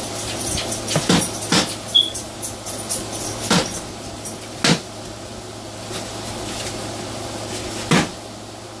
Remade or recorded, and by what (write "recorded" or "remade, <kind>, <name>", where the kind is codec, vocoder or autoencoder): recorded